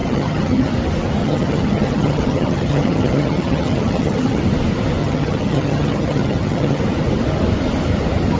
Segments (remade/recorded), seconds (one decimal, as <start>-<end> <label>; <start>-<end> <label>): 0.0-0.7 remade; 0.7-1.2 recorded; 1.2-4.4 remade; 4.4-5.0 recorded; 5.0-6.8 remade; 6.8-8.4 recorded